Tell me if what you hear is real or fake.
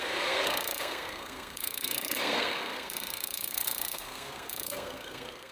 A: fake